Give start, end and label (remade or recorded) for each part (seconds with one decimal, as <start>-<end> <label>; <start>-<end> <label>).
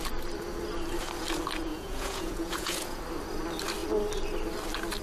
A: 0.0-1.7 recorded; 1.7-3.0 remade; 3.0-5.0 recorded